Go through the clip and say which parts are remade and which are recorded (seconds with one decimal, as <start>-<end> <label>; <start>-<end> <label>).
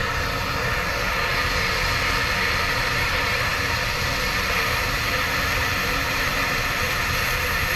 0.0-2.6 recorded; 2.6-3.5 remade; 3.5-5.6 recorded; 5.6-7.8 remade